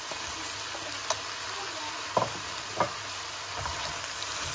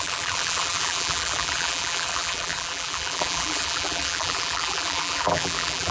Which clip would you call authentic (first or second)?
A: first